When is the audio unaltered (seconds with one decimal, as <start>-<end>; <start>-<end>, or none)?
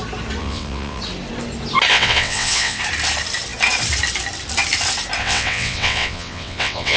0.0-0.4; 1.0-1.9; 2.8-5.2